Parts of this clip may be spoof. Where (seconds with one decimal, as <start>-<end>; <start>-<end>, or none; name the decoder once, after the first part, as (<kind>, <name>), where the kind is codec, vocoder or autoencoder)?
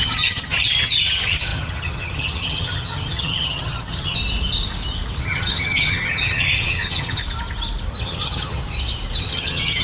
0.0-4.2 (vocoder, HiFi-GAN); 5.2-7.2; 8.0-8.6; 9.2-9.8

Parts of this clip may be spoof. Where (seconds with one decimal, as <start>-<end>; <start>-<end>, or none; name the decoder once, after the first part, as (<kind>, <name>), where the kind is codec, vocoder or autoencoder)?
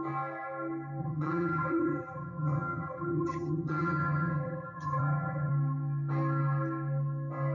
1.0-5.5 (vocoder, HiFi-GAN)